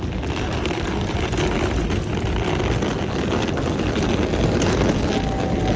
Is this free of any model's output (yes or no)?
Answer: yes